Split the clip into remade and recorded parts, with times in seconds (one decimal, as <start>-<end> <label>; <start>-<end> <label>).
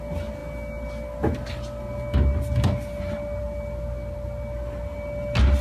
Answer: 0.0-5.6 recorded